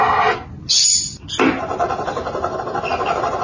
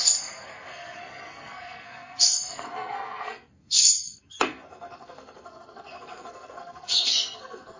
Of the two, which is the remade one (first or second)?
second